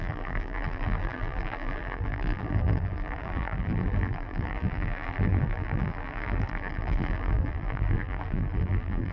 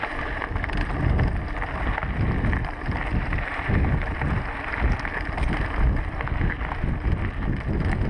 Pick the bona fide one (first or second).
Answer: second